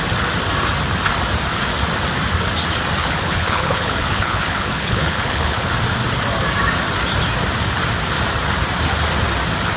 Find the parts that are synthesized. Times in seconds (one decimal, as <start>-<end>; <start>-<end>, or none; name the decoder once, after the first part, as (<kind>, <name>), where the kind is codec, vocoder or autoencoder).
3.0-5.7 (codec, HILCodec)